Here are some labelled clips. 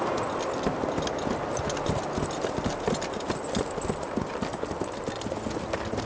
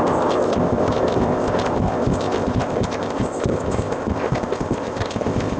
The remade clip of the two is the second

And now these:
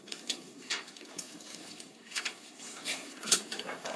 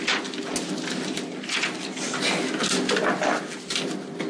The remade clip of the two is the first